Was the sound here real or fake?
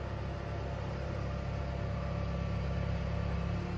real